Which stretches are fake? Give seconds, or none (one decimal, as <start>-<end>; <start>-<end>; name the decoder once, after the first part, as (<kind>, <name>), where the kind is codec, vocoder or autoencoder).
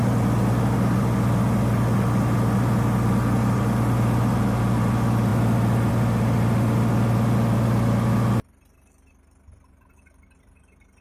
none